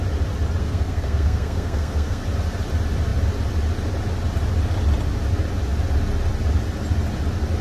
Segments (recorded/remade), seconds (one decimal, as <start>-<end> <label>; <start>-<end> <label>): 0.0-0.6 recorded; 0.6-2.2 remade; 2.2-7.6 recorded